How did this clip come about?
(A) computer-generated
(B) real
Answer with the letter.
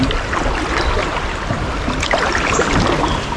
B